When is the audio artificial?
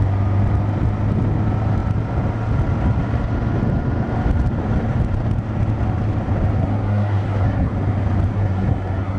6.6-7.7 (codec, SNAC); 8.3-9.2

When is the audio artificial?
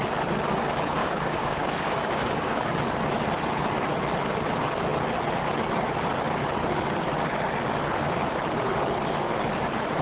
1.0-2.7 (codec, DAC)